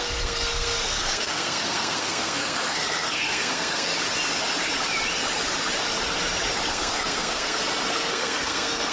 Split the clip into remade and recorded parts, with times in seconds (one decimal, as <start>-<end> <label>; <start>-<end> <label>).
0.0-3.9 remade; 3.9-6.7 recorded; 6.7-7.6 remade; 7.6-8.1 recorded; 8.1-8.9 remade